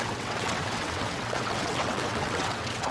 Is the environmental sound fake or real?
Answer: fake